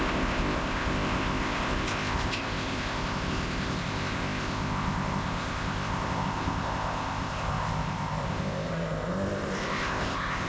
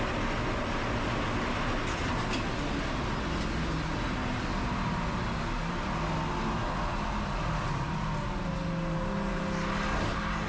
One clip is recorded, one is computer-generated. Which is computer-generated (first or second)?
first